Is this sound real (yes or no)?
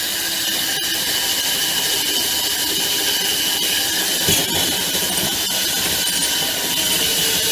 yes